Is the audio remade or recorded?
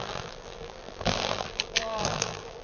remade